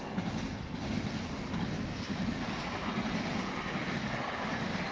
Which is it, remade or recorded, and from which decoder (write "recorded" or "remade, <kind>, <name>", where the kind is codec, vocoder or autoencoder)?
recorded